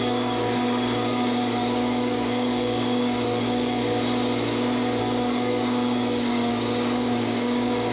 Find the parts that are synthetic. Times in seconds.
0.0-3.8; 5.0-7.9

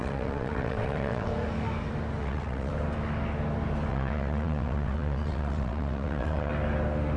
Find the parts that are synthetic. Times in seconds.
0.0-1.3; 2.2-2.7; 3.9-6.5